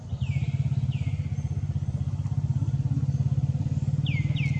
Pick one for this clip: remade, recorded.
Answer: recorded